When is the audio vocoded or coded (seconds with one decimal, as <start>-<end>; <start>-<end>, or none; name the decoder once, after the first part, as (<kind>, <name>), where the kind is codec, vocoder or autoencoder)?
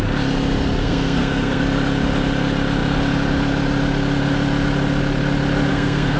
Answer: 0.8-1.6 (codec, SNAC); 5.7-6.2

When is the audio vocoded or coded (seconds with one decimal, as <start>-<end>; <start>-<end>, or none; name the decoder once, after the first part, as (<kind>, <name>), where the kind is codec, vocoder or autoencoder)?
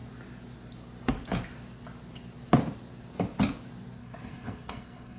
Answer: 4.0-5.2 (codec, SNAC)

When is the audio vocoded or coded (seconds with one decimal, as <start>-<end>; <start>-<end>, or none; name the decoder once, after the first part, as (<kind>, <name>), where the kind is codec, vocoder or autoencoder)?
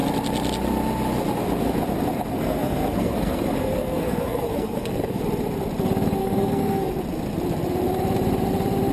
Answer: 2.3-5.2 (codec, SNAC); 6.2-6.9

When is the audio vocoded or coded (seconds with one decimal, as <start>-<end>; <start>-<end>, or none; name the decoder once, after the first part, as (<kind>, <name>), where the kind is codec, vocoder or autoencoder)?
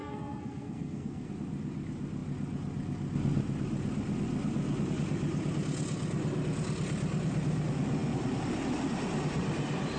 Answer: 0.0-1.3 (codec, SNAC)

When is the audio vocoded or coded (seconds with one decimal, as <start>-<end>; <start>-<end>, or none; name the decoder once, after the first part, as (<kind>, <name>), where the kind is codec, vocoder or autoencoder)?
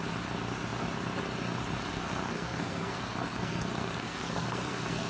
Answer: 1.9-5.1 (codec, SNAC)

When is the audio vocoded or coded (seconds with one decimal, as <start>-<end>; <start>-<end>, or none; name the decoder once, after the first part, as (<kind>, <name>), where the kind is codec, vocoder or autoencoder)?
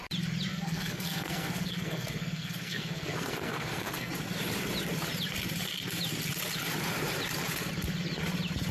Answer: 0.5-4.1 (codec, SNAC)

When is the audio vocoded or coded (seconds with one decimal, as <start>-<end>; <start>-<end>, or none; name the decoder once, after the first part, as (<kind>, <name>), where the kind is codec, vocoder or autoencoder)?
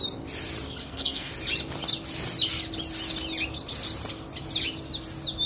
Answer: 0.8-1.3 (codec, SNAC)